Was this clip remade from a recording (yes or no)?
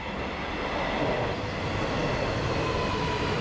no